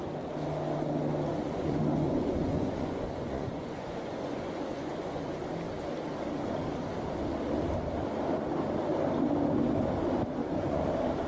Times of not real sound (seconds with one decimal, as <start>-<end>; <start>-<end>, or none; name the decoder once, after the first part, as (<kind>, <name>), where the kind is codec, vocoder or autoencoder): 1.3-5.4 (vocoder, Vocos); 10.4-10.9